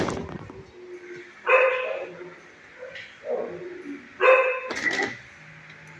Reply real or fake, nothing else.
real